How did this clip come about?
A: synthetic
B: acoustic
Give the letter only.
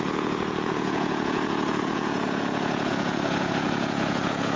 A